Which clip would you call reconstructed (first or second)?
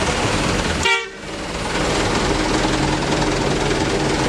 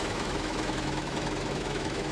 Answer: second